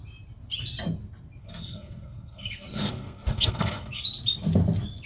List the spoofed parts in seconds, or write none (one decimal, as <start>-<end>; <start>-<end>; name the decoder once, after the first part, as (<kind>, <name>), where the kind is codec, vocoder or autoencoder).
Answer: 1.4-4.0 (codec, SNAC)